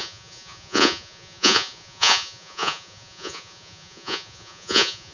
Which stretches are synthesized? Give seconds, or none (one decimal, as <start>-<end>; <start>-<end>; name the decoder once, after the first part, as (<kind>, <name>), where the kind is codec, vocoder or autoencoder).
0.0-5.1 (vocoder, Vocos)

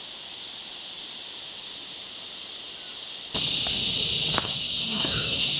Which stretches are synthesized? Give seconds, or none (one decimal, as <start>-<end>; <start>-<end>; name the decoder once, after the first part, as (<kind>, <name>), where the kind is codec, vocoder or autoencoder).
4.4-5.6 (codec, SNAC)

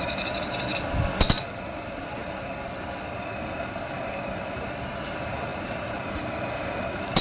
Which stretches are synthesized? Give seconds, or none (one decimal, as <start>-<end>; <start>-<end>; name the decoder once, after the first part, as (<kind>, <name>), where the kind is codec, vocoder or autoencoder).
5.5-6.2 (vocoder, BigVGAN v2)

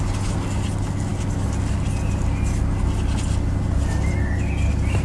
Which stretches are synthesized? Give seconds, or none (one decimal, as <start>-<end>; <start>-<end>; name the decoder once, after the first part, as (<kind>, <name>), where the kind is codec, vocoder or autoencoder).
none